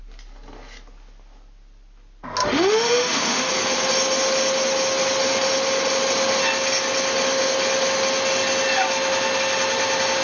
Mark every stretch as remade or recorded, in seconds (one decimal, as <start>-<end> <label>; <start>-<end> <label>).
0.0-2.4 recorded; 2.4-3.5 remade; 3.5-10.2 recorded